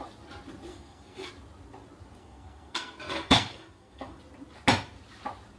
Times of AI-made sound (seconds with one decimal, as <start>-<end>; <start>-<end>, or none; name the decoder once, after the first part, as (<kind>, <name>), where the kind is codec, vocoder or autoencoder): 0.7-1.3 (codec, SNAC); 2.2-4.2